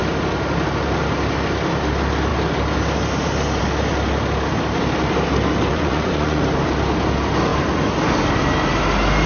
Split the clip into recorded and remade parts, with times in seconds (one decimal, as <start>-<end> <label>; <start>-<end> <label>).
0.0-5.7 recorded; 5.7-6.4 remade; 6.4-9.3 recorded